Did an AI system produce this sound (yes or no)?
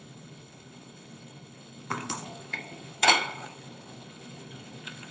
yes